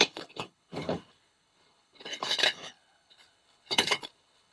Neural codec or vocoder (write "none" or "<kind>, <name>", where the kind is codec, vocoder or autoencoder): codec, HILCodec